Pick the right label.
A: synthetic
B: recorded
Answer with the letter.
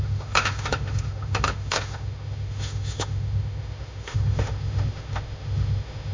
A